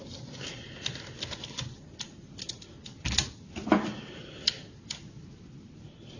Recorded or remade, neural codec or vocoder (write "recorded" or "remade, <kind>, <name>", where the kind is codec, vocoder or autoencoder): recorded